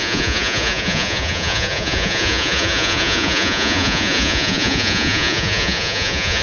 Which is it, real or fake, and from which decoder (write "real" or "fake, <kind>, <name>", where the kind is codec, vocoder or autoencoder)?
fake, vocoder, Vocos